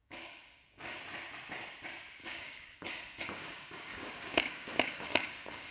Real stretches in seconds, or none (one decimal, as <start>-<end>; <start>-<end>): 1.0-2.2